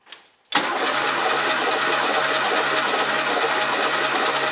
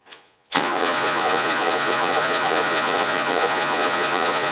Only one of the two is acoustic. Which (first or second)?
first